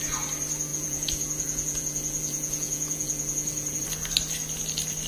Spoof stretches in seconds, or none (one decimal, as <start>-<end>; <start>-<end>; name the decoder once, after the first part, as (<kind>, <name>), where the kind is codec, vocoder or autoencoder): 0.7-3.8 (vocoder, Vocos)